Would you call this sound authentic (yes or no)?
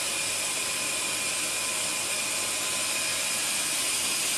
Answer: yes